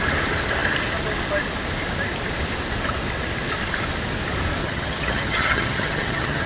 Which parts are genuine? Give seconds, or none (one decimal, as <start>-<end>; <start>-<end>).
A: 0.0-4.6